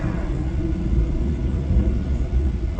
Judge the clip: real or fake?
fake